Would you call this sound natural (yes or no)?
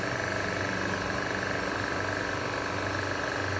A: yes